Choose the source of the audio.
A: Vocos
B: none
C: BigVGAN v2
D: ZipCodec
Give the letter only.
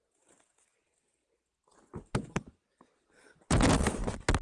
B